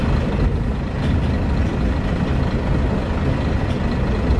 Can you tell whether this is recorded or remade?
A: recorded